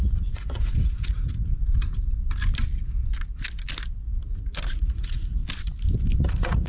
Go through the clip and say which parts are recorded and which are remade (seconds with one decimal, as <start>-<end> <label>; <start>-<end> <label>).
0.0-1.5 remade; 1.5-4.8 recorded; 4.8-5.4 remade; 5.4-6.2 recorded; 6.2-6.7 remade